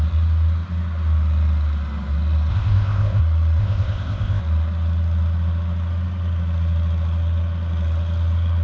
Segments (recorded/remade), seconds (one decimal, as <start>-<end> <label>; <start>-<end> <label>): 0.0-2.5 recorded; 2.5-3.2 remade; 3.2-3.6 recorded; 3.6-4.4 remade; 4.4-8.6 recorded